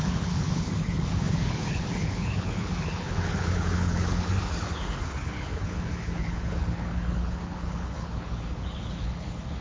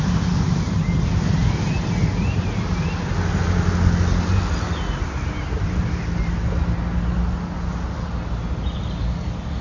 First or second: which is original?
second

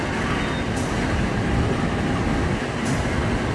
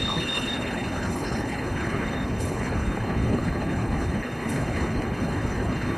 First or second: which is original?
first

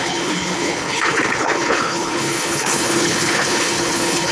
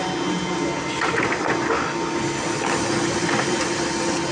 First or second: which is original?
second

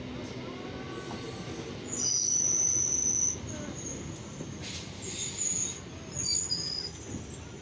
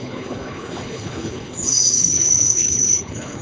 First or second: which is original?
first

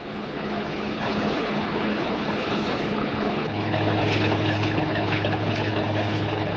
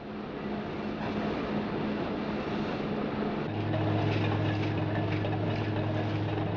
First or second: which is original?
second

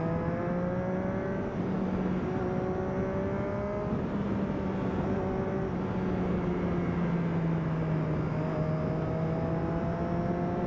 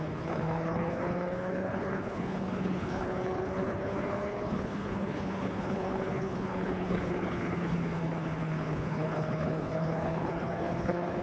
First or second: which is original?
first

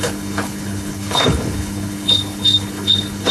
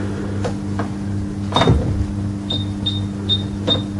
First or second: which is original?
second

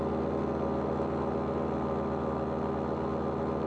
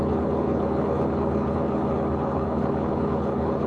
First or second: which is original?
first